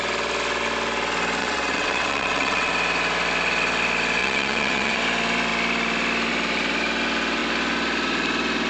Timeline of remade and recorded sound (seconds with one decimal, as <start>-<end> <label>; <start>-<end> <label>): 0.0-1.4 recorded; 1.4-2.7 remade; 2.7-4.2 recorded; 4.2-5.0 remade; 5.0-8.7 recorded